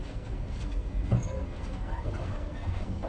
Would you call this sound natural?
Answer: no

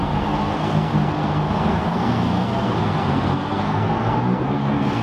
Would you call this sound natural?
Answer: no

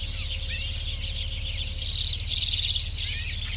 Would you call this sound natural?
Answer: yes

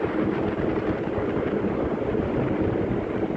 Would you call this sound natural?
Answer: no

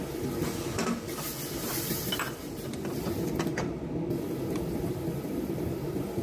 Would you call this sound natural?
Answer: yes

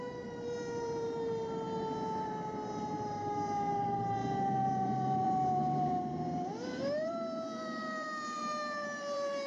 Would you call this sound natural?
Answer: no